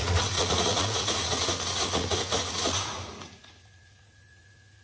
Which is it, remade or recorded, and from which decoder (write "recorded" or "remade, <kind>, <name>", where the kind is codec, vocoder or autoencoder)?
remade, vocoder, Vocos